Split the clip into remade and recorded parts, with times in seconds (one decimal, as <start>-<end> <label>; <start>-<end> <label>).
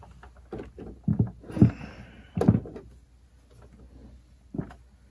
0.0-5.1 recorded